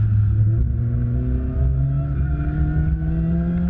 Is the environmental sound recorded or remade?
recorded